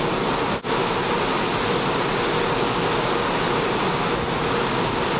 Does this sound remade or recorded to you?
recorded